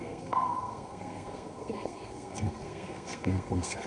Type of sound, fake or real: fake